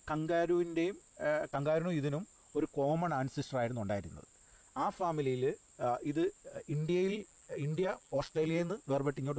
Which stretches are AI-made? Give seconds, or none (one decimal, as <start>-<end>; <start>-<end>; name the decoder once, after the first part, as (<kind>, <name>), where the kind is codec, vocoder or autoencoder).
7.1-8.7 (vocoder, BigVGAN v2)